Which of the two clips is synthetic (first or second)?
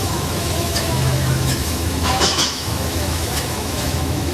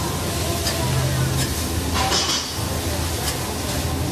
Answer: first